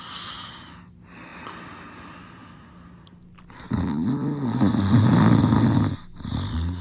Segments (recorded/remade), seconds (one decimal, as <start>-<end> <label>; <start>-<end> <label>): 0.0-6.8 recorded